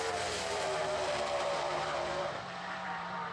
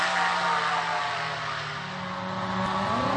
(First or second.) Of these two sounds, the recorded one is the second